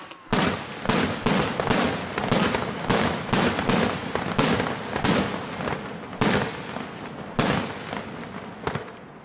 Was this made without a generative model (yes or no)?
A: yes